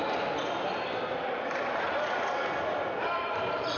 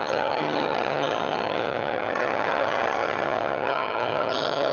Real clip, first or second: first